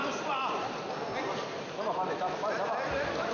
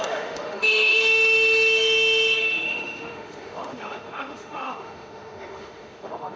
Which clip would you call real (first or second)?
first